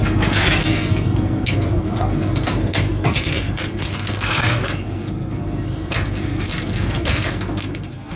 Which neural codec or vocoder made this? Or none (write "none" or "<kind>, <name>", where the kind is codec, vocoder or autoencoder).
codec, SNAC